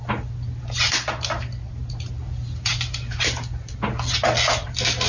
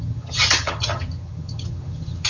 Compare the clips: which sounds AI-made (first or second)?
second